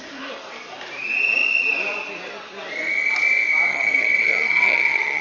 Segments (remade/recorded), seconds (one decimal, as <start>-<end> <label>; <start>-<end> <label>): 0.0-3.7 recorded; 3.7-5.2 remade